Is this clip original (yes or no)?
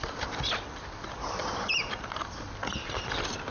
no